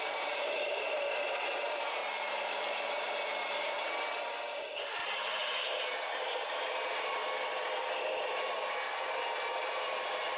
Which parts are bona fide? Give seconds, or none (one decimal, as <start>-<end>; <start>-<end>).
2.0-3.5; 7.2-9.8